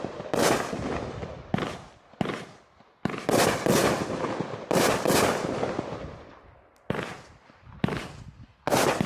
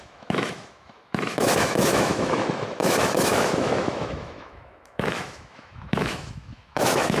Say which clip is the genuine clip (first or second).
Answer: first